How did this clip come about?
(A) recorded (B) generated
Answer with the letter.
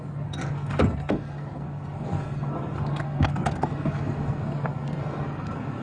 B